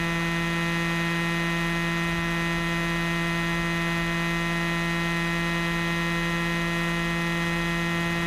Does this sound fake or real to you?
real